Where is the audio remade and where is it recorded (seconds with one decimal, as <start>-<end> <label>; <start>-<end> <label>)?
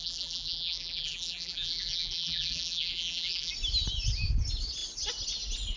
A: 0.0-3.5 remade; 3.5-5.8 recorded